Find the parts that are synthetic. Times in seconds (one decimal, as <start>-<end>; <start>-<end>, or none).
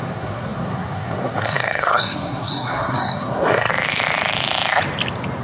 0.0-3.7